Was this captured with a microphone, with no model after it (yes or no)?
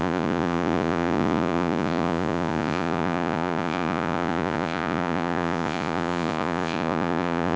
no